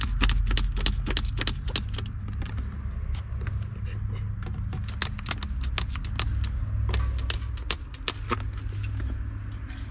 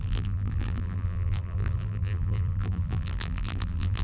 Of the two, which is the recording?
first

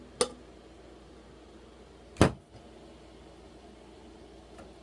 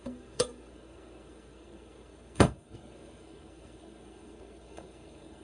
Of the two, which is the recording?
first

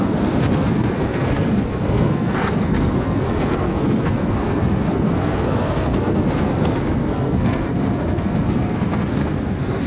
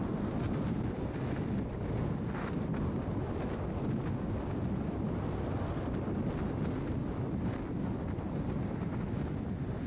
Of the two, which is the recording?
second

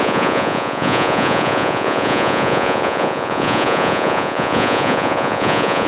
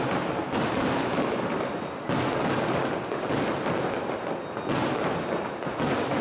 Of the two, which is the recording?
second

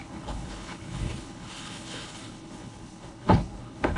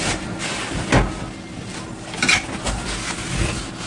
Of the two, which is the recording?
second